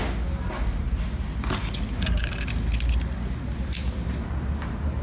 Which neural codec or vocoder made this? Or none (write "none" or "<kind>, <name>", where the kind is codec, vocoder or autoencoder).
none